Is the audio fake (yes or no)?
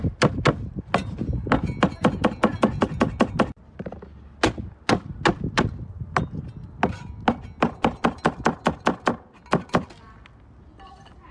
no